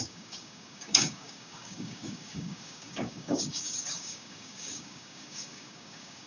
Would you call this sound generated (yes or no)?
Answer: yes